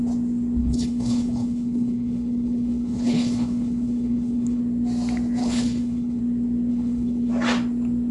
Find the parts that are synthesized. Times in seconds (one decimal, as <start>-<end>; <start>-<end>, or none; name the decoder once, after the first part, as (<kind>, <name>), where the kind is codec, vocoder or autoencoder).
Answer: 0.6-4.6 (codec, HILCodec); 5.4-6.2; 6.7-7.3